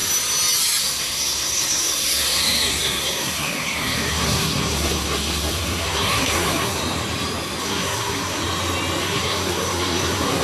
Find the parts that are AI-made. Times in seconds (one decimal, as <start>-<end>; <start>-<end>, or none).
0.8-6.8; 7.6-8.4; 9.0-10.4